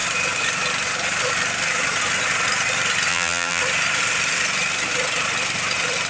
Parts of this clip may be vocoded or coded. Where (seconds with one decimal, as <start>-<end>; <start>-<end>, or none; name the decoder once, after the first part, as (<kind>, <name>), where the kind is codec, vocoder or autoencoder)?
3.1-3.6 (vocoder, BigVGAN v2)